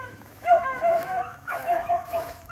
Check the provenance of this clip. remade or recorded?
remade